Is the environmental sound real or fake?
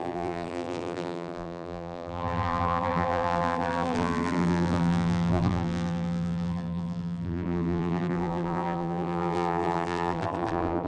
fake